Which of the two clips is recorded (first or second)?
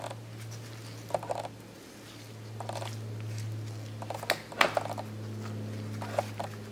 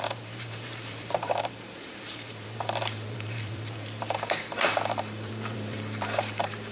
first